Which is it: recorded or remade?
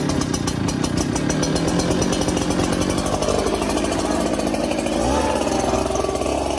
recorded